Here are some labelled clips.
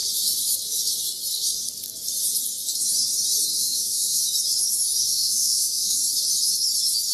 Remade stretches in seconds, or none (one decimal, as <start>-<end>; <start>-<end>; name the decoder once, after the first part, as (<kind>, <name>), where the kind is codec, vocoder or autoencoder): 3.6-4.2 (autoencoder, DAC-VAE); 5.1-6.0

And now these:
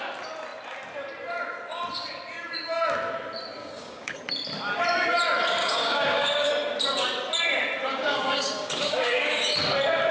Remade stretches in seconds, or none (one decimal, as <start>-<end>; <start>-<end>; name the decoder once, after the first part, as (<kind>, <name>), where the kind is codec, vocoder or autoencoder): 3.6-4.2 (codec, DAC); 5.6-6.5; 7.9-9.5

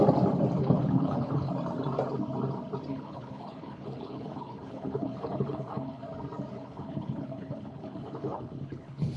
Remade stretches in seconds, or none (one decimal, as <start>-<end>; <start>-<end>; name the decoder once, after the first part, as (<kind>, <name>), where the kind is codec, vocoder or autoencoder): 0.6-1.5 (codec, HILCodec); 2.9-6.0; 6.5-9.2

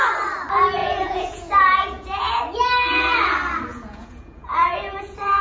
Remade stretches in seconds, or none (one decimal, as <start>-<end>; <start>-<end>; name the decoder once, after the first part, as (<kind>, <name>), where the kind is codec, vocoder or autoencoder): 0.8-2.4 (vocoder, Vocos); 3.7-5.4